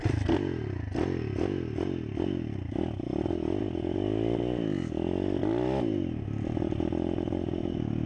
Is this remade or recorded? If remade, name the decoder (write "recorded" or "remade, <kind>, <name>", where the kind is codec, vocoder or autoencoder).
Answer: recorded